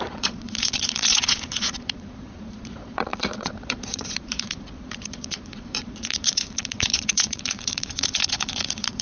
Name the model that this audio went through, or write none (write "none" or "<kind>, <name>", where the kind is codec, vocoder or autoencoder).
vocoder, Vocos